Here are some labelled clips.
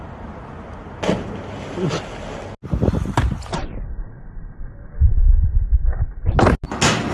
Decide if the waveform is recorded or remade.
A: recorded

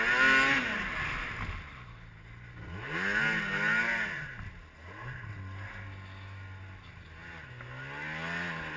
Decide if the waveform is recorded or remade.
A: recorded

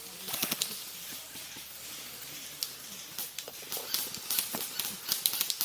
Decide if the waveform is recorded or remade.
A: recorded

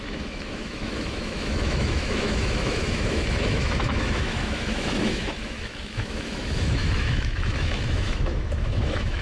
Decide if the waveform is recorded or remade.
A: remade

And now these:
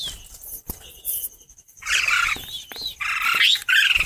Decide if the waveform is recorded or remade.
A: recorded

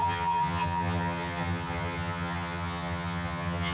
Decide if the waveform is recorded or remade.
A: remade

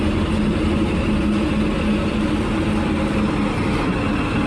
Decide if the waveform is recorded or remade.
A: recorded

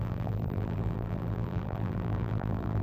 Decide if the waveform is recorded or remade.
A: remade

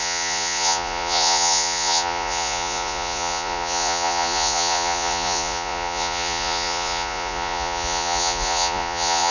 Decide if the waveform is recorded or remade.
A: remade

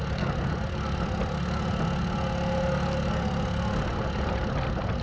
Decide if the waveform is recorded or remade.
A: recorded